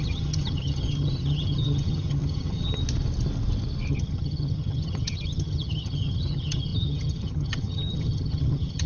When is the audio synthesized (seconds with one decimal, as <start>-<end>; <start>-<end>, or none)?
0.0-2.8; 3.9-8.9